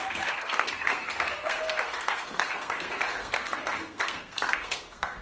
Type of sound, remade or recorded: remade